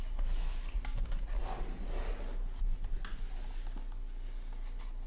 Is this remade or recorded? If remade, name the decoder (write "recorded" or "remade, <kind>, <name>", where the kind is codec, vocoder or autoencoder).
recorded